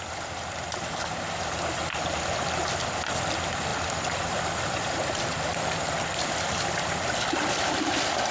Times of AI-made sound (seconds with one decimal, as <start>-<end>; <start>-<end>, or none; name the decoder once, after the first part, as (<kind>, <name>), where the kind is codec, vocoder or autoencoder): none

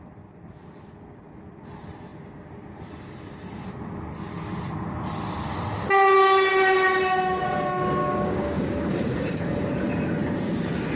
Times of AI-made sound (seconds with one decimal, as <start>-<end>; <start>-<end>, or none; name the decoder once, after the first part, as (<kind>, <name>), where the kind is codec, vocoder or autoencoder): 8.0-9.7 (codec, DAC)

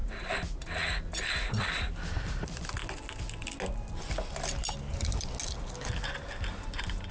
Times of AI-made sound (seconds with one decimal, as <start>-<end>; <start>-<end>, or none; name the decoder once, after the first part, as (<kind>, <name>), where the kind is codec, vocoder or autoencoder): none

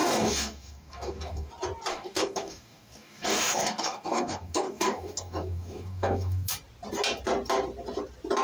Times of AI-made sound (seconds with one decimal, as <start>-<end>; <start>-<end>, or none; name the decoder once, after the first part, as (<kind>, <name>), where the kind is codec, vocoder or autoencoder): 0.0-1.5 (codec, DAC); 1.9-6.5

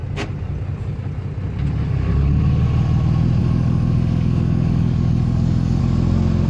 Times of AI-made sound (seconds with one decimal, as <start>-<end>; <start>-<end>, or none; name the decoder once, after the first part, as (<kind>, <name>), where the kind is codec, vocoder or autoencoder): 3.4-5.8 (codec, DAC)

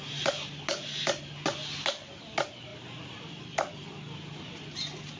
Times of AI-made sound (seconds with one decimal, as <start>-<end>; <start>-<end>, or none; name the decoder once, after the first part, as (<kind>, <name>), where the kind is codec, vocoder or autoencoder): none

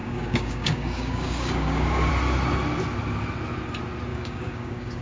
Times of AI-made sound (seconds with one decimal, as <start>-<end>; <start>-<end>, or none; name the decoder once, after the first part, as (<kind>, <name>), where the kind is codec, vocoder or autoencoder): 0.0-2.1 (codec, DAC); 4.1-5.0